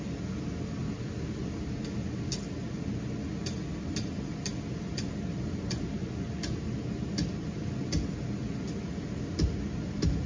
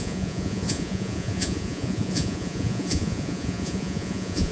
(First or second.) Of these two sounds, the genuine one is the first